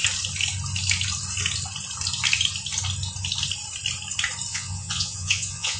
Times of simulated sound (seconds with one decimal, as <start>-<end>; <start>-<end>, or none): 4.5-5.8